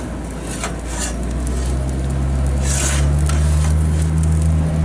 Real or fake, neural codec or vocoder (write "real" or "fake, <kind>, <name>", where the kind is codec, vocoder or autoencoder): real